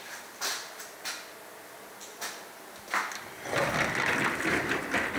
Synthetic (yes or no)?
no